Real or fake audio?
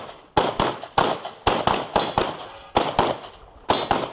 real